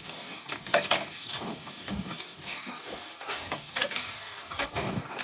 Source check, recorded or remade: remade